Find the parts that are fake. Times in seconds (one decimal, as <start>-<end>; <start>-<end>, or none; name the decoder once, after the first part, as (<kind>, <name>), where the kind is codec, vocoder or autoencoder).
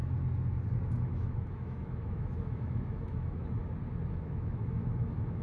0.7-3.6 (autoencoder, DAC-VAE); 4.1-5.4